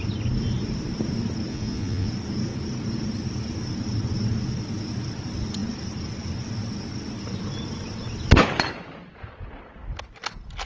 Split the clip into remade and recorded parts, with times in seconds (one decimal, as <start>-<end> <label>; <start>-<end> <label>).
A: 0.0-1.5 recorded; 1.5-2.1 remade; 2.1-10.7 recorded

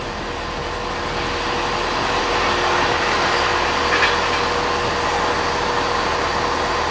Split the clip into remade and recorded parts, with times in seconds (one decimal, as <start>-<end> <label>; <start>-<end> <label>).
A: 0.0-6.9 recorded

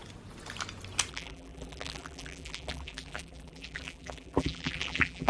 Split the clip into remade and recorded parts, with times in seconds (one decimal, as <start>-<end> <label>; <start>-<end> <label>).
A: 0.0-1.1 recorded; 1.1-5.3 remade

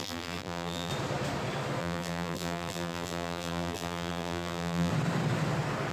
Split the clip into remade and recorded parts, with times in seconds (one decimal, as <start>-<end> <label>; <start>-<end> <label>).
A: 0.0-0.9 remade; 0.9-1.8 recorded; 1.8-4.9 remade; 4.9-5.9 recorded

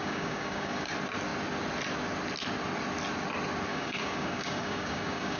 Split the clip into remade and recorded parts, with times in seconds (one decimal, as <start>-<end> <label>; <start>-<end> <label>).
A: 0.0-0.9 remade; 0.9-3.7 recorded; 3.7-5.4 remade

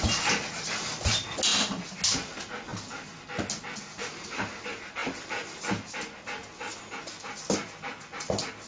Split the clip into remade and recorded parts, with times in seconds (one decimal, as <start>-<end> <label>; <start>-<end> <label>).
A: 0.0-8.7 recorded

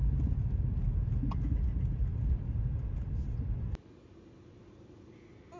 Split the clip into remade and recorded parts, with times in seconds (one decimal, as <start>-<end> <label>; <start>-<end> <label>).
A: 0.0-5.6 recorded

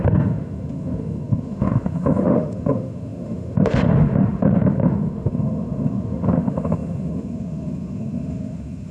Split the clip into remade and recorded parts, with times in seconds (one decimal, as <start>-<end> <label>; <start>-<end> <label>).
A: 0.0-8.9 remade